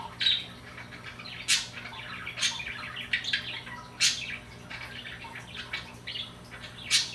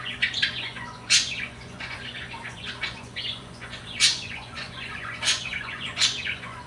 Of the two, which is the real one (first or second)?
first